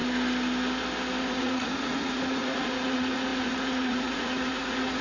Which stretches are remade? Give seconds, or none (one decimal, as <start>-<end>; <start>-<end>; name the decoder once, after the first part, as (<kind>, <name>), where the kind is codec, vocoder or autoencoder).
1.2-5.0 (vocoder, Vocos)